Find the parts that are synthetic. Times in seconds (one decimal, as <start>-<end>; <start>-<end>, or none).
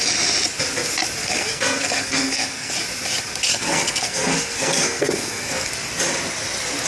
1.2-2.7; 3.5-5.7